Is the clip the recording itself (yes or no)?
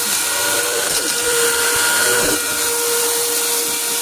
no